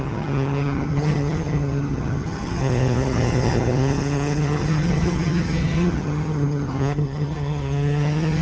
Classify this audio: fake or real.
fake